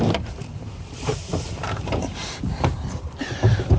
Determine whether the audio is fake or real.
fake